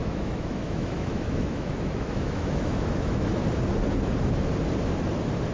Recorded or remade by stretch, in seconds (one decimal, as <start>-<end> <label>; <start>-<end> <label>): 0.0-3.3 remade; 3.3-5.5 recorded